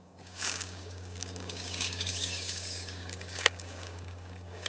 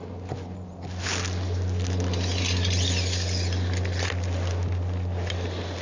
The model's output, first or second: first